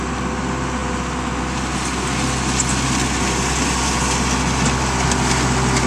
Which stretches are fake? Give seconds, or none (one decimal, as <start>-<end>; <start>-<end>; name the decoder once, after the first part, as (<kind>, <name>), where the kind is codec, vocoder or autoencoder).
none